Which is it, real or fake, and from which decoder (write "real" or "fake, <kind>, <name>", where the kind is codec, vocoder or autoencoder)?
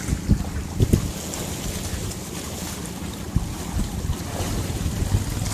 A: real